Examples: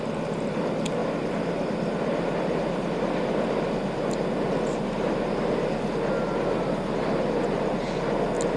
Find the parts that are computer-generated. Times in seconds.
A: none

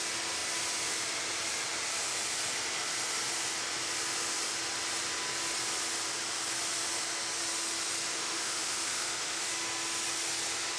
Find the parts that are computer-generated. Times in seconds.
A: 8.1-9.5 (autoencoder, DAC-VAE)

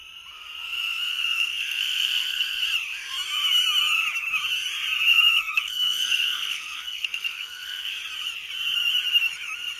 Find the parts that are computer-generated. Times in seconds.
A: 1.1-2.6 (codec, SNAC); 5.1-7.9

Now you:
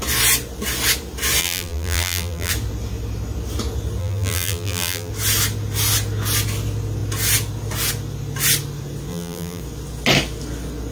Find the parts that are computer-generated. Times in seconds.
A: 1.4-2.5 (vocoder, BigVGAN v2); 4.0-5.1; 9.1-9.6

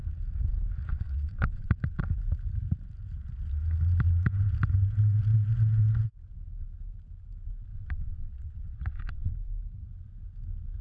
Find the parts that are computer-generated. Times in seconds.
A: 0.9-2.0 (vocoder, WaveNeXt); 7.7-9.3

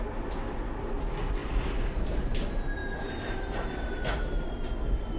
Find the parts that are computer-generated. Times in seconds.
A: 1.4-2.3 (vocoder, BigVGAN v2); 2.8-4.4